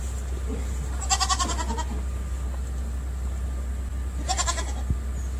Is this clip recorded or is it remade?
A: recorded